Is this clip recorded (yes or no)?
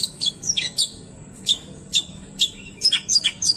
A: no